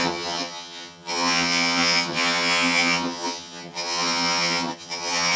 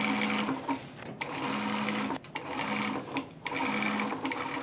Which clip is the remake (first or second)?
first